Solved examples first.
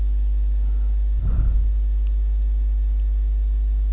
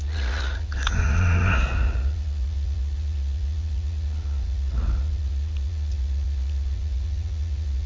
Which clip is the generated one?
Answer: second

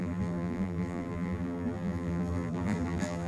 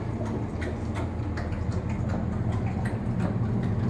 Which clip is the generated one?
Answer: first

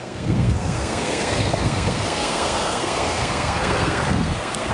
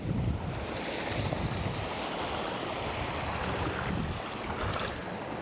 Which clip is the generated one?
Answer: first